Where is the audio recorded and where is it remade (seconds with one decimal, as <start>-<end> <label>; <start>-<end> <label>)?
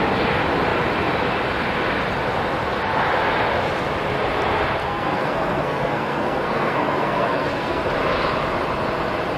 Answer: 0.0-4.8 recorded; 4.8-7.9 remade; 7.9-9.4 recorded